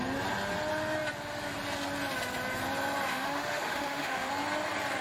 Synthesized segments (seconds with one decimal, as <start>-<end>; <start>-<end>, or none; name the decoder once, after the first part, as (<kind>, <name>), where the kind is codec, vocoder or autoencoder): 3.1-4.3 (autoencoder, DAC-VAE)